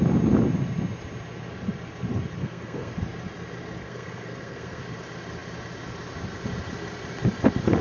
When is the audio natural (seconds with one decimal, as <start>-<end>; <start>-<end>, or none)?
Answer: 0.0-2.4; 2.9-3.8; 4.8-7.8